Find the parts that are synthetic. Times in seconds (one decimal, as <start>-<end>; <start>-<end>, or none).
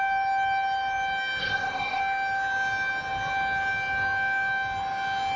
1.4-2.0